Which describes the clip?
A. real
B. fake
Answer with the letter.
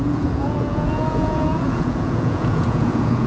B